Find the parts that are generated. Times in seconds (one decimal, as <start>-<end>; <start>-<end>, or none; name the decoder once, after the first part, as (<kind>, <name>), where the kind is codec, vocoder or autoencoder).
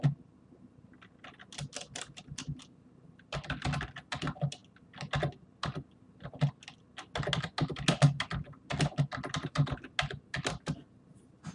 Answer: none